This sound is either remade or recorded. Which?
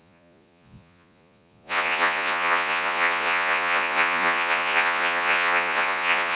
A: remade